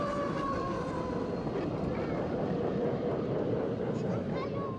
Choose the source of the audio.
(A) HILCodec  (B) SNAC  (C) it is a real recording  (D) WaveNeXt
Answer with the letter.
C